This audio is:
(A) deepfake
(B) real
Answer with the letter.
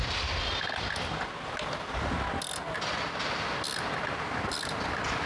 B